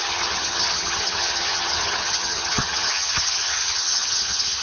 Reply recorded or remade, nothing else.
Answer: remade